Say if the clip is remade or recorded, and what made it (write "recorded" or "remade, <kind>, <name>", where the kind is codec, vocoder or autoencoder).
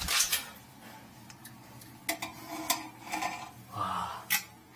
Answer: recorded